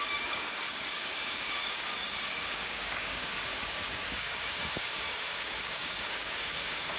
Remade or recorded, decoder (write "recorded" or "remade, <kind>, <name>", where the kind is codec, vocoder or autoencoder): remade, codec, DAC